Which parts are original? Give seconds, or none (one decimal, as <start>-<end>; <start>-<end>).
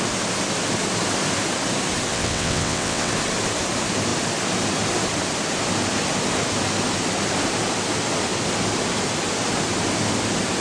0.0-2.1; 3.1-10.6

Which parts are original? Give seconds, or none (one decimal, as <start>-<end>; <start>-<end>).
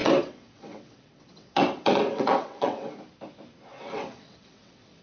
2.9-3.7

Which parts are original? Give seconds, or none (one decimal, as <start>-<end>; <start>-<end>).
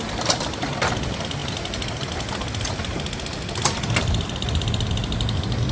0.0-5.7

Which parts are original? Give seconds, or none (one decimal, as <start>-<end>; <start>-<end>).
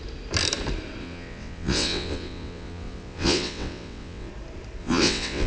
0.0-1.0; 4.3-4.8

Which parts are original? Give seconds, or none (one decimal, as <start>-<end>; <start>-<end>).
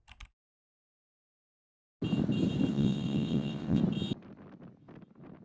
0.0-2.7; 3.8-5.4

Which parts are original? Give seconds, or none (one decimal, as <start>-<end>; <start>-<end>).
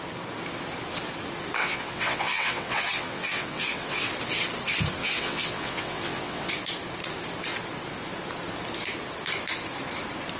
0.0-1.6; 4.1-5.0; 6.5-10.4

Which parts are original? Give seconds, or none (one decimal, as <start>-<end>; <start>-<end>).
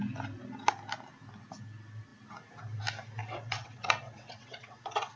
0.0-3.2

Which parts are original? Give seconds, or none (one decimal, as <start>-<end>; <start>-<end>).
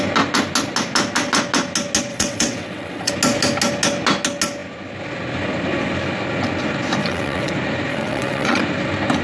0.0-2.1; 3.1-7.0; 7.5-7.9; 8.6-9.2